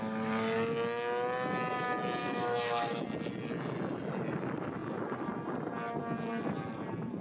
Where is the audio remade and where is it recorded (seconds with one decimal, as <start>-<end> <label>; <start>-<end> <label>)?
0.0-2.2 recorded; 2.2-3.0 remade; 3.0-7.2 recorded